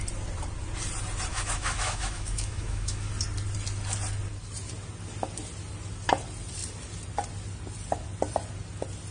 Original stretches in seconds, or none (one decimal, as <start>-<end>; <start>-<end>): 0.0-1.3; 3.1-9.1